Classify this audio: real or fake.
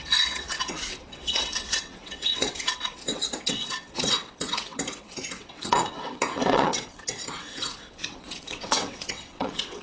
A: fake